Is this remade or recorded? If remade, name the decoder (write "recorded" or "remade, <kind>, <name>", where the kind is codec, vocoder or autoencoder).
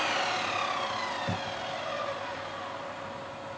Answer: recorded